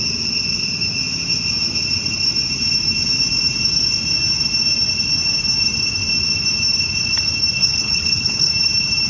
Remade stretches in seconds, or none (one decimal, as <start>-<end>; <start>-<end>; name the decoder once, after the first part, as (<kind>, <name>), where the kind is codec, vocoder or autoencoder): 7.6-8.5 (codec, HILCodec)

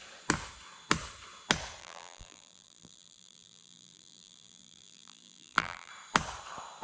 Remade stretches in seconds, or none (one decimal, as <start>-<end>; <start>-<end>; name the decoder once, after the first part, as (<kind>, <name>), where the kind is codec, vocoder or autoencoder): 1.8-5.9 (vocoder, BigVGAN v2)

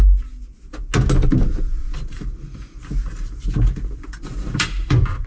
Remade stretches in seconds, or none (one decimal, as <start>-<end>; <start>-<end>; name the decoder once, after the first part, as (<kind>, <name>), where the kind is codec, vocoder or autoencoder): 1.8-5.3 (vocoder, BigVGAN v2)

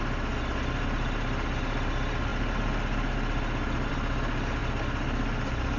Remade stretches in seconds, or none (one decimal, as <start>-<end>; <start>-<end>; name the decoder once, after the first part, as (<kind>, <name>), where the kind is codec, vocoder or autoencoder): none

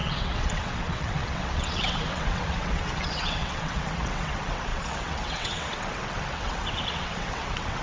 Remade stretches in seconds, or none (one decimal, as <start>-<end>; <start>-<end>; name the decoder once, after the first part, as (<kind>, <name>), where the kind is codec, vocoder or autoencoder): 0.0-7.8 (vocoder, WaveNeXt)

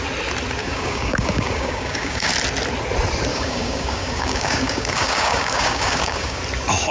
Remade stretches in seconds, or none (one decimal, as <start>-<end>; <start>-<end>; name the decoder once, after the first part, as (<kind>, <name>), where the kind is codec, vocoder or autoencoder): 0.6-2.3 (codec, DAC); 3.3-6.4